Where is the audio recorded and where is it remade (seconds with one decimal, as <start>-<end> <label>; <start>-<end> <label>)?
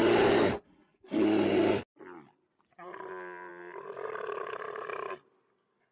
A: 0.0-5.9 recorded